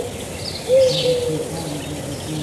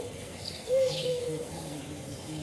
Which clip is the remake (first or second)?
second